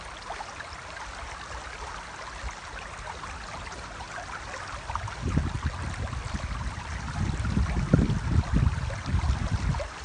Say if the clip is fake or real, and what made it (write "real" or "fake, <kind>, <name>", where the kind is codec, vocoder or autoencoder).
real